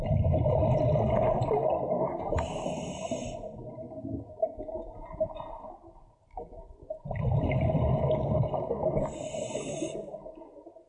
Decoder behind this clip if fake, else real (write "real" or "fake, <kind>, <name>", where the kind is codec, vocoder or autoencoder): real